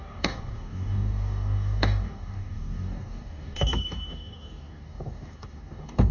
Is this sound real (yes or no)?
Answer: no